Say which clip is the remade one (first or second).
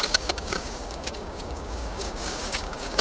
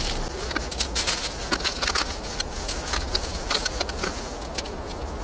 first